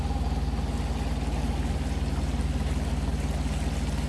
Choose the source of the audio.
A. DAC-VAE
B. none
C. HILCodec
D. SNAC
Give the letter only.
B